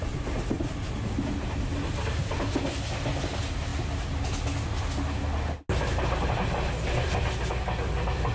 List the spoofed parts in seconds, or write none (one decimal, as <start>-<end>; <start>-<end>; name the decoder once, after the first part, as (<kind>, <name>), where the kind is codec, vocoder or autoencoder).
none